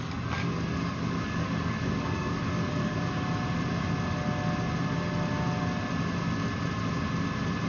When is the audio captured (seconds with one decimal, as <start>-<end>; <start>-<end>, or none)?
0.0-0.7; 3.0-7.7